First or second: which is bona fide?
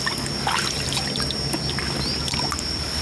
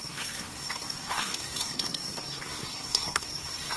first